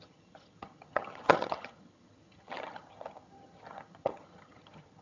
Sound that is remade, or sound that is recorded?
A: remade